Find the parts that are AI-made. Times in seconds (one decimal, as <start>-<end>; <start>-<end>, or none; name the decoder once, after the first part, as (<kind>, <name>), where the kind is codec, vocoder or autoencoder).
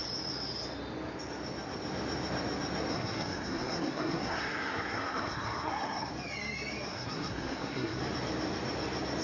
2.9-6.1 (codec, SNAC); 6.9-8.0